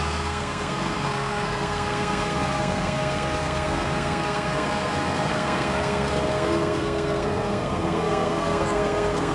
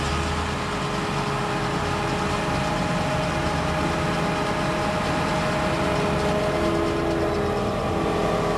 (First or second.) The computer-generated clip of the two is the first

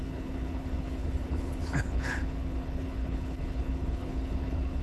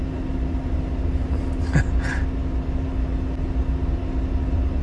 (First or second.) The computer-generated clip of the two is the first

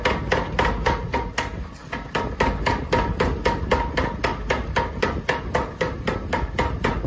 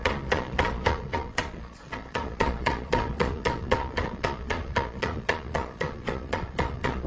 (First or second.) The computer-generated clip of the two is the second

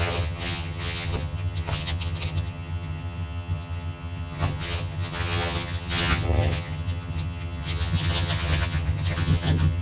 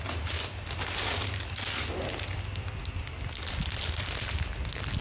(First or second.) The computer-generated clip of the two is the first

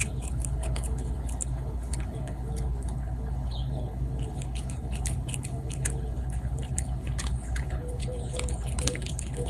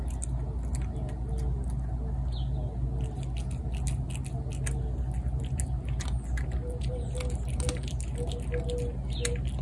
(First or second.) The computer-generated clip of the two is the first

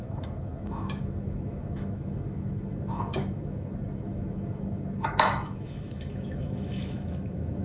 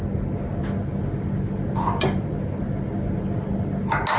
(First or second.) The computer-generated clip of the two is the first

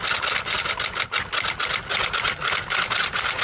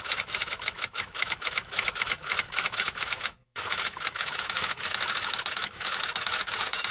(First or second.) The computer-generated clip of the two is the second